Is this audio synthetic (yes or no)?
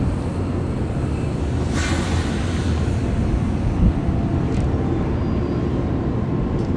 no